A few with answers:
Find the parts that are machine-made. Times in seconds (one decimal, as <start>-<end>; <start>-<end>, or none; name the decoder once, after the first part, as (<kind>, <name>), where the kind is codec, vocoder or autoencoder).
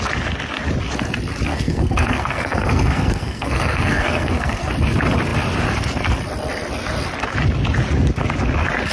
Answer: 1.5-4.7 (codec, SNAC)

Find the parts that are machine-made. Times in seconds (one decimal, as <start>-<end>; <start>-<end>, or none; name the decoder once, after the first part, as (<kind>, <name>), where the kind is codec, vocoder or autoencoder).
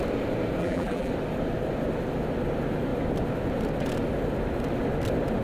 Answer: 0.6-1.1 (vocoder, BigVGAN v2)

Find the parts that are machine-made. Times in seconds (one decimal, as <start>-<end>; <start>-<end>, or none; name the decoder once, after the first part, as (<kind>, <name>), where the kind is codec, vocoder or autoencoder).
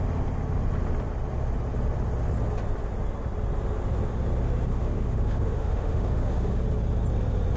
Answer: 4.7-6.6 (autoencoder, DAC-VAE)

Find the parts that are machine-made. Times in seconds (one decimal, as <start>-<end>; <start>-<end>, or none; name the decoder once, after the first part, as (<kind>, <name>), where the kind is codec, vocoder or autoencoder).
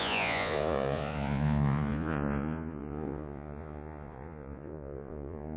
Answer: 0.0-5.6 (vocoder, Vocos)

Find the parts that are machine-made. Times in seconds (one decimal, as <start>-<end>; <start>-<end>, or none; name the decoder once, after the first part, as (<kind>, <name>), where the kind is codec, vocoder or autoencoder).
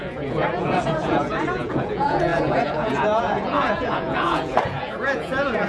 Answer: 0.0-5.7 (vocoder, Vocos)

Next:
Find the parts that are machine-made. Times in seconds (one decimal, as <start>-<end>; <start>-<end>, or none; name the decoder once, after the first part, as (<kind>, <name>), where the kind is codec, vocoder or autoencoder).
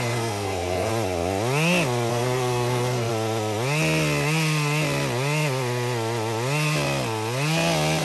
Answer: 0.0-0.9 (codec, SNAC); 2.1-3.1